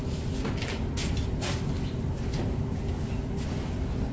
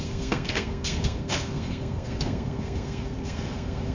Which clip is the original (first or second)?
first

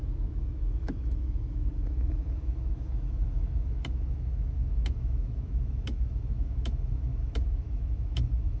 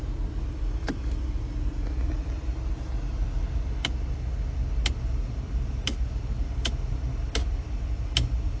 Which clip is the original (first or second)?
second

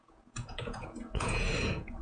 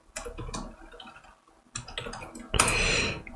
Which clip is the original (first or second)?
second